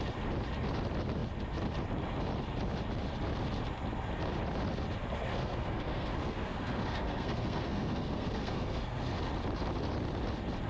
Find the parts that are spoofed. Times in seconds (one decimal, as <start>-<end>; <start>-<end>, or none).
5.3-9.2